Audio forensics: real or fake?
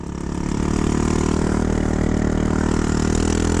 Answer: real